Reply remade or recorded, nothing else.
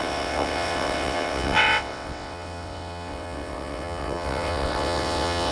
remade